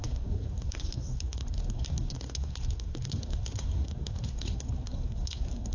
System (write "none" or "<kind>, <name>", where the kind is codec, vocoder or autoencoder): codec, SNAC